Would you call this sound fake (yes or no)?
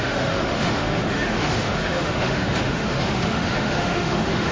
yes